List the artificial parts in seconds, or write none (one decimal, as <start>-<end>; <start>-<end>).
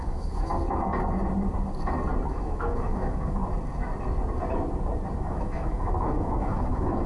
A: 0.0-0.5; 2.3-3.4; 5.2-7.1